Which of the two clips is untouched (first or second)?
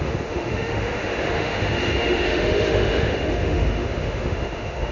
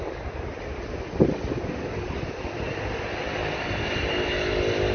second